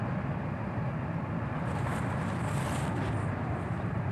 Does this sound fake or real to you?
real